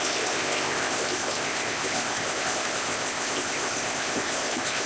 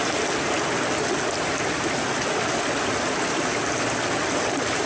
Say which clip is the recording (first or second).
second